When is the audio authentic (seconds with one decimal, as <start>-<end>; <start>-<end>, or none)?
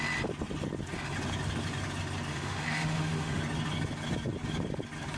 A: 0.0-2.3; 3.4-5.2